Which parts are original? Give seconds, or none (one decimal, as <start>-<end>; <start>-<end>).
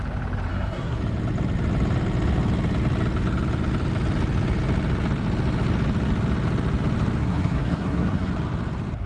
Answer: 0.0-0.5; 1.0-7.2; 8.3-9.1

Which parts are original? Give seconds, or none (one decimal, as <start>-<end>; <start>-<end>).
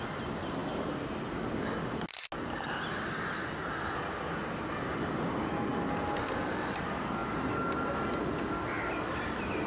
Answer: 0.0-9.7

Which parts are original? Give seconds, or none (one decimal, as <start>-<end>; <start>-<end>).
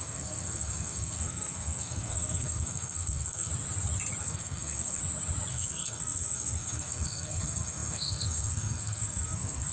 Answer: 3.5-4.2; 5.0-5.5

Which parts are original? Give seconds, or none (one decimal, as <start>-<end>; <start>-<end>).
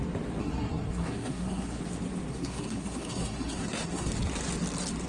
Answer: 0.0-0.4; 1.8-2.3; 4.1-5.1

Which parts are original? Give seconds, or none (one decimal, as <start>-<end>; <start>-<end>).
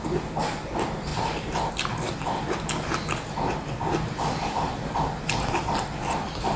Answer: 0.0-6.6